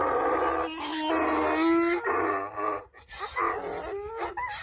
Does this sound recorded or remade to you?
recorded